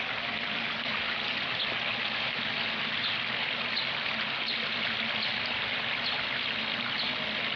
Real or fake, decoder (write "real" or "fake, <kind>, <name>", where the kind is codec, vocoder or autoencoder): real